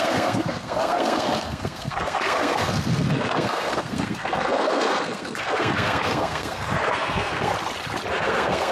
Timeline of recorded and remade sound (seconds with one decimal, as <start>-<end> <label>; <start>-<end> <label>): 0.0-7.5 remade; 7.5-8.1 recorded; 8.1-8.7 remade